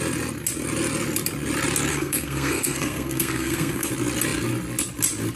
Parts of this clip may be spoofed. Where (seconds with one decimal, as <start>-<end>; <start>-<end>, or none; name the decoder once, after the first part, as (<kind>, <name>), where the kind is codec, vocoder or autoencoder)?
1.9-3.9 (codec, SNAC)